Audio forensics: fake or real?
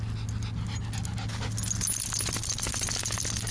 real